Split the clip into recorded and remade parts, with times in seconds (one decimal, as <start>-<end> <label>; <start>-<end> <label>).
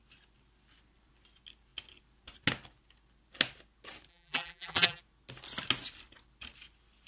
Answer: 0.0-4.1 recorded; 4.1-5.0 remade; 5.0-7.1 recorded